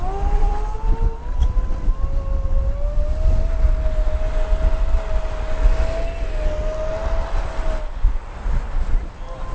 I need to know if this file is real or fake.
real